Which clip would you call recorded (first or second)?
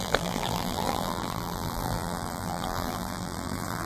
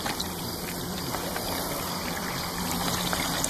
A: second